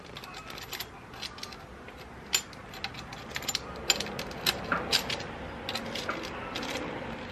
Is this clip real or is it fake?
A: real